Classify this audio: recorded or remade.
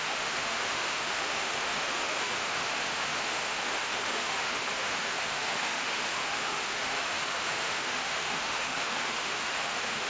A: remade